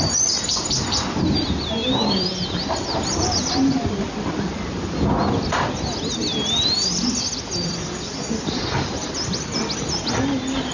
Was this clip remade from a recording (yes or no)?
no